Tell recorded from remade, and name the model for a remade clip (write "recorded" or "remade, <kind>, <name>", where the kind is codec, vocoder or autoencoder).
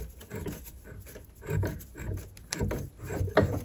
recorded